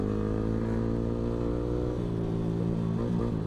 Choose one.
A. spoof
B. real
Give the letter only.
B